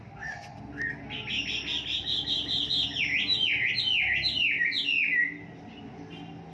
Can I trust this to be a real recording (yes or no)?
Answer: yes